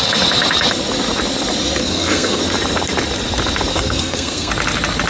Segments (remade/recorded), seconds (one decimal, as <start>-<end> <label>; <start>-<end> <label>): 0.0-1.8 recorded; 1.8-2.4 remade; 2.4-3.7 recorded; 3.7-4.5 remade; 4.5-5.1 recorded